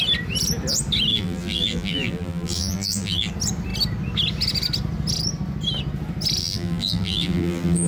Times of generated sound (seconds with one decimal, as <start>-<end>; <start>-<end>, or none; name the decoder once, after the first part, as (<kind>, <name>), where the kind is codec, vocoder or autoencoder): 1.1-3.3 (vocoder, BigVGAN v2); 6.4-7.9